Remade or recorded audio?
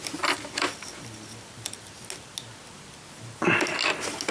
recorded